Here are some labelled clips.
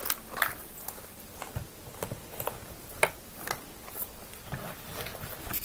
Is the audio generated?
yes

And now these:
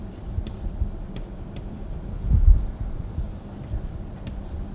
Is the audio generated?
yes